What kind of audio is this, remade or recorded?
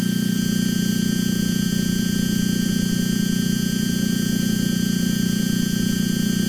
recorded